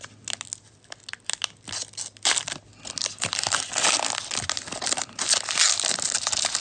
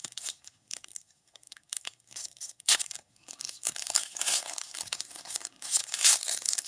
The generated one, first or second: second